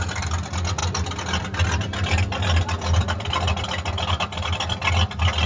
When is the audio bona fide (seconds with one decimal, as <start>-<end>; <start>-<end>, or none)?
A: 0.0-5.5